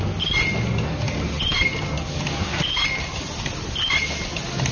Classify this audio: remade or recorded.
recorded